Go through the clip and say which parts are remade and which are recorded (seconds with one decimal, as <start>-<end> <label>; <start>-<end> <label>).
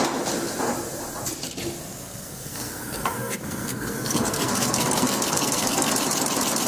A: 0.0-1.9 recorded; 1.9-5.9 remade; 5.9-6.7 recorded